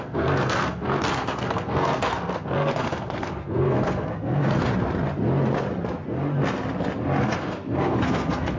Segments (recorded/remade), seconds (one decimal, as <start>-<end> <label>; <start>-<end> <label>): 0.0-4.7 remade; 4.7-7.2 recorded; 7.2-8.6 remade